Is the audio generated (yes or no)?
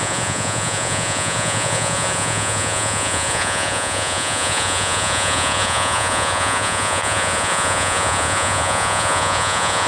yes